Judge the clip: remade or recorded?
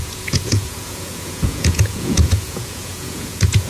remade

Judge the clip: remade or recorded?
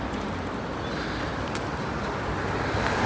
recorded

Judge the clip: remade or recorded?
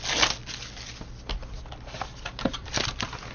recorded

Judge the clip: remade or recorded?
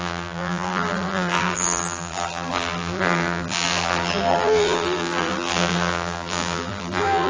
remade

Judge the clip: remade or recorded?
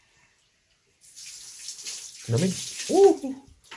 recorded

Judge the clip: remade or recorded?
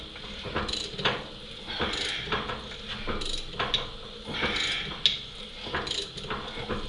recorded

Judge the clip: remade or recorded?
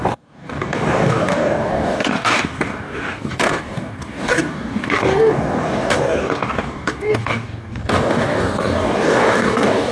remade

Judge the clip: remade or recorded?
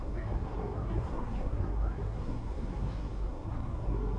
remade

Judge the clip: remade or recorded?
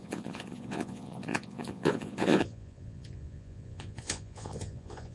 remade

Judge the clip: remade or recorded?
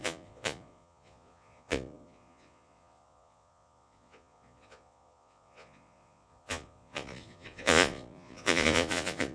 remade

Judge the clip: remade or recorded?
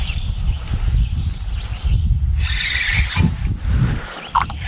recorded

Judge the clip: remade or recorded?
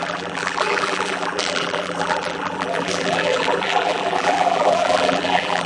remade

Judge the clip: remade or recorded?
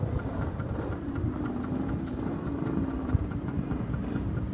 remade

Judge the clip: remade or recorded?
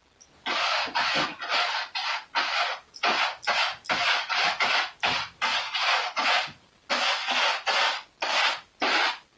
recorded